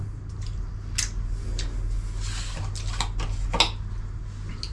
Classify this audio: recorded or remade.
recorded